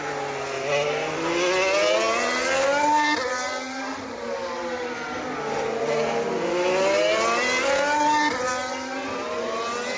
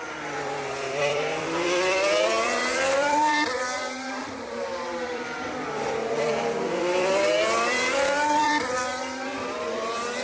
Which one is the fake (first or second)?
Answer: second